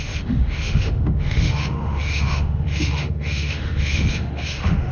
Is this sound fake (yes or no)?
yes